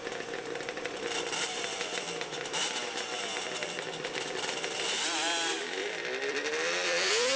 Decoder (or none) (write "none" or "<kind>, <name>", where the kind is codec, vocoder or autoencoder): vocoder, BigVGAN v2